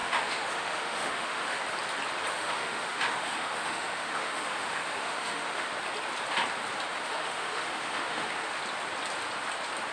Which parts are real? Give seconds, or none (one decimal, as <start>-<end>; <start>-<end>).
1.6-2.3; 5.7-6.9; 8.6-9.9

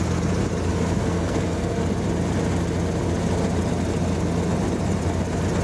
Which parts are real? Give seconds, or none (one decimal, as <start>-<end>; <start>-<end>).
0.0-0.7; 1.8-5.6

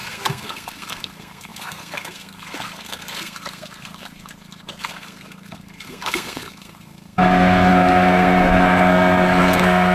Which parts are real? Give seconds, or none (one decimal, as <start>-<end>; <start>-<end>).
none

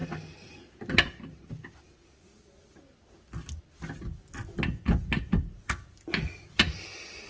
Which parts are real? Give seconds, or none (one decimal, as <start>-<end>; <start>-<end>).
0.0-7.3